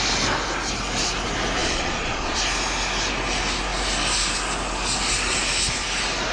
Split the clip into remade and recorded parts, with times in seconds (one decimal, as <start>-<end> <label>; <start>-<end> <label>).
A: 0.0-1.6 recorded; 1.6-2.4 remade; 2.4-6.3 recorded